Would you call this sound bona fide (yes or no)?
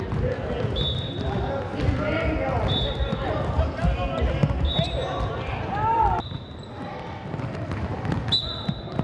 yes